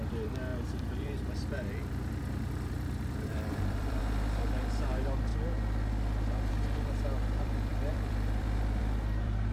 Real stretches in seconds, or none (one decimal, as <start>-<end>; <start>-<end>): 5.3-6.5

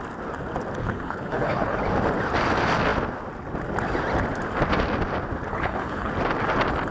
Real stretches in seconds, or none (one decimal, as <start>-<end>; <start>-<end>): 0.0-0.8; 1.8-5.5; 6.1-6.9